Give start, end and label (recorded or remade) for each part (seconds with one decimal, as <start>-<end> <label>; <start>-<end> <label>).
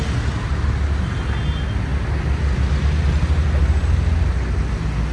0.0-5.1 recorded